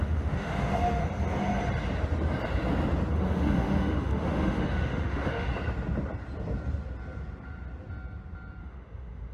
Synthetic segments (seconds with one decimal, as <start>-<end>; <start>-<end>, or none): 0.0-1.0; 3.1-5.5; 8.6-9.3